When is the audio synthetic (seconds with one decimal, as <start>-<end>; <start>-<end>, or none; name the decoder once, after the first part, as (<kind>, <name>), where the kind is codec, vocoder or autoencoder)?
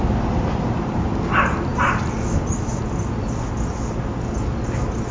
none